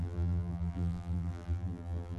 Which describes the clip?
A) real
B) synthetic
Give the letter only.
B